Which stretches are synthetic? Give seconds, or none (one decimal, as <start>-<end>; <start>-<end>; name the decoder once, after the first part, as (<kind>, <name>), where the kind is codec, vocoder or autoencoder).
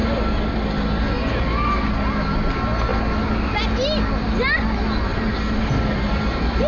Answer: 5.1-6.1 (vocoder, BigVGAN v2)